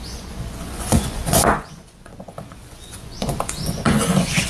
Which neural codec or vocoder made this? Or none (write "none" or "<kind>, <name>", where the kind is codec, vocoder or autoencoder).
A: vocoder, Vocos